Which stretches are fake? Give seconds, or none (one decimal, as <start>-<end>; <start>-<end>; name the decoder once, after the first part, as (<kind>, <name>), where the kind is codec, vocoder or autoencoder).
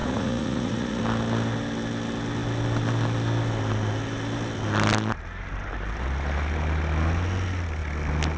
0.0-1.0 (vocoder, Vocos)